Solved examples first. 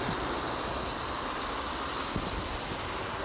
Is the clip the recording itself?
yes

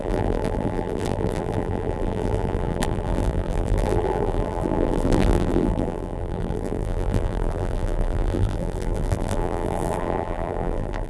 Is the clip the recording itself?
no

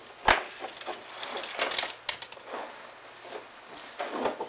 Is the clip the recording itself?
yes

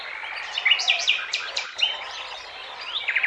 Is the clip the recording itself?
yes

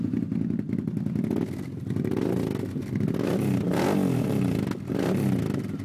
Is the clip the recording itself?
yes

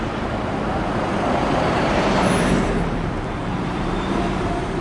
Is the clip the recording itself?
no